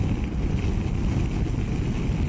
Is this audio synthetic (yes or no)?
no